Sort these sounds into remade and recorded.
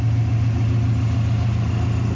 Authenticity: recorded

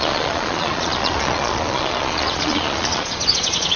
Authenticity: remade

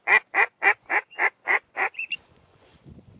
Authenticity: remade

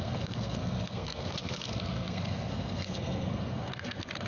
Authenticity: remade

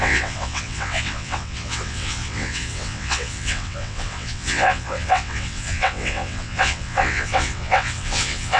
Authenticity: remade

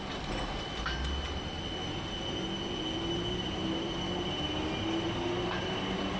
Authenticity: recorded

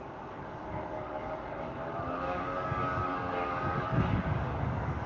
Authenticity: remade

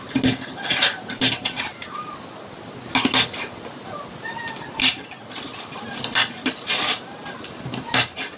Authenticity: recorded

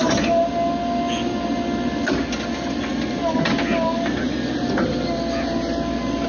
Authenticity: recorded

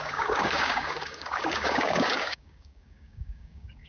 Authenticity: remade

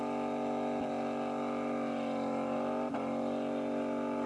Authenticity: recorded